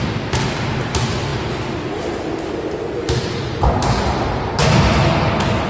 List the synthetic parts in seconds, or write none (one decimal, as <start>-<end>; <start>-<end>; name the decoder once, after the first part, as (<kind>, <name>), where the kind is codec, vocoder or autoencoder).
none